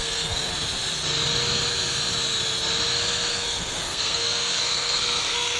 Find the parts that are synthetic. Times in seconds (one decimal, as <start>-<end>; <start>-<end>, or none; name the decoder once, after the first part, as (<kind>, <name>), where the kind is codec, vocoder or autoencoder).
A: 0.0-0.5 (codec, SNAC); 3.3-5.6